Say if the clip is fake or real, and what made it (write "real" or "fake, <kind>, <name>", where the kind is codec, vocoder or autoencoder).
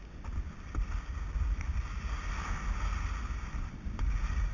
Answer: real